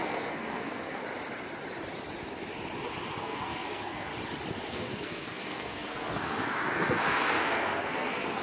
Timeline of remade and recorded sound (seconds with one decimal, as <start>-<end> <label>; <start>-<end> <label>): 0.0-1.0 remade; 1.0-3.2 recorded; 3.2-4.1 remade; 4.1-4.7 recorded; 4.7-8.4 remade